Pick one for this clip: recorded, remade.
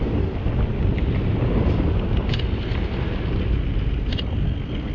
recorded